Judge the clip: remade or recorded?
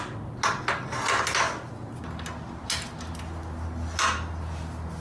recorded